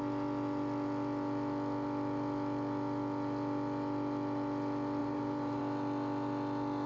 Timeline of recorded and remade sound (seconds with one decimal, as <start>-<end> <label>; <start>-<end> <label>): 0.0-5.0 recorded; 5.0-5.6 remade; 5.6-6.9 recorded